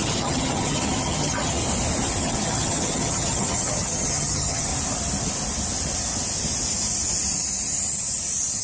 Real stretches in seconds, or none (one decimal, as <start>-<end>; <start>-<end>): 1.6-2.2; 4.7-8.6